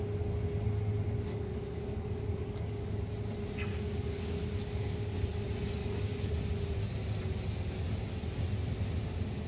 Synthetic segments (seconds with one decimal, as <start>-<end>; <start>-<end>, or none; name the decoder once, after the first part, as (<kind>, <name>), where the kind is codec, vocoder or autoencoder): 1.3-3.0 (codec, DAC); 3.7-5.1; 5.8-6.3